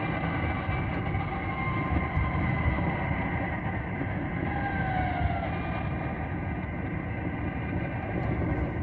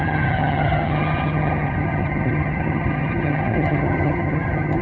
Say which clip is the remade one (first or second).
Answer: second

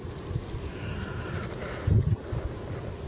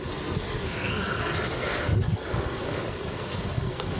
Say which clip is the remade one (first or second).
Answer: second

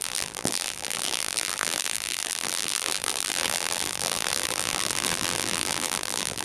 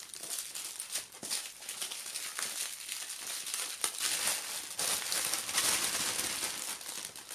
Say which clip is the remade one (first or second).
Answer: first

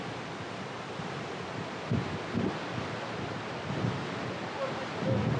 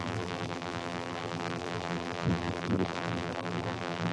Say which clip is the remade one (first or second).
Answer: second